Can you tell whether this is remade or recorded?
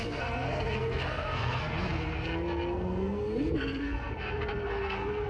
remade